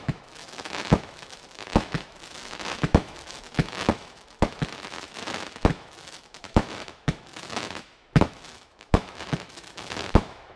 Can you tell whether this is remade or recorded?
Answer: remade